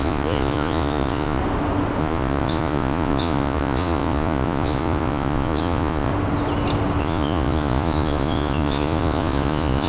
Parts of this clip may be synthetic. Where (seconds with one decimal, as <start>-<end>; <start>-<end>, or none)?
0.0-1.4; 2.0-6.1; 7.0-9.9